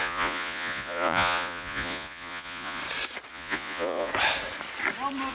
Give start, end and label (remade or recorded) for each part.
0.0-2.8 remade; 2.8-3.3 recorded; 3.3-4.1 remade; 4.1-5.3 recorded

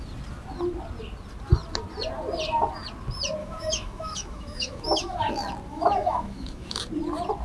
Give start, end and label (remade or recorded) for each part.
0.0-3.4 recorded; 3.4-5.3 remade; 5.3-5.7 recorded; 5.7-6.8 remade; 6.8-7.4 recorded

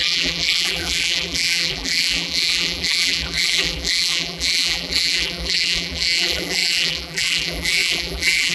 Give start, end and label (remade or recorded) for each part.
0.0-8.5 remade

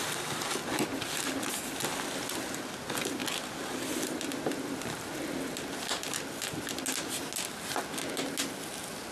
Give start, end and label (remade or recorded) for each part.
0.0-9.1 recorded

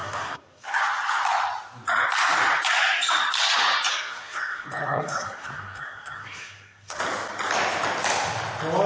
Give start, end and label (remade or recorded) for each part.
0.0-0.8 remade; 0.8-3.9 recorded; 3.9-7.0 remade; 7.0-8.9 recorded